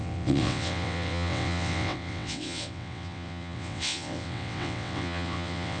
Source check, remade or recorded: remade